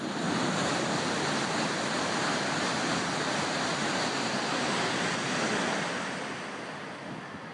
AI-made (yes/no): no